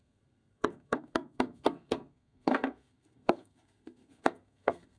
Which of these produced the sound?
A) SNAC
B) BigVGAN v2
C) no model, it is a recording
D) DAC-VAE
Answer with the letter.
A